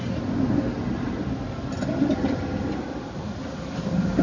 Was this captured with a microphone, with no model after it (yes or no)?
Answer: yes